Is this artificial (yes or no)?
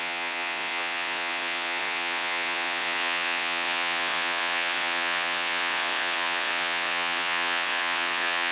yes